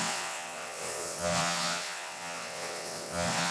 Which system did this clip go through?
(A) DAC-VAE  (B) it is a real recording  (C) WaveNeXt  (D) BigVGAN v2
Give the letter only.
C